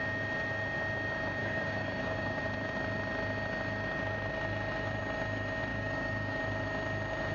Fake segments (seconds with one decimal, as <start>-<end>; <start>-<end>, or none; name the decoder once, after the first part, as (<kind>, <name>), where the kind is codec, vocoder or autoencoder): 1.4-2.4 (codec, DAC); 5.7-6.4